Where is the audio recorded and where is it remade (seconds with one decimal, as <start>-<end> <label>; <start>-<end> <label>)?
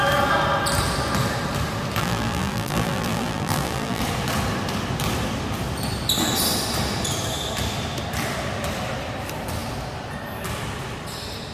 0.0-2.0 recorded; 2.0-4.0 remade; 4.0-11.5 recorded